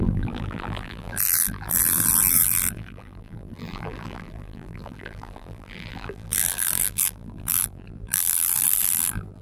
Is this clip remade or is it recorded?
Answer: remade